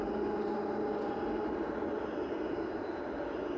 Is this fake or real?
real